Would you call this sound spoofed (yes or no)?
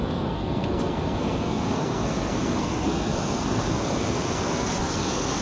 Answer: yes